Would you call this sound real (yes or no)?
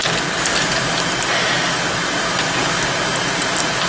yes